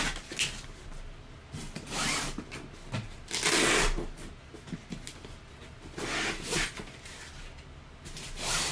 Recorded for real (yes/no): yes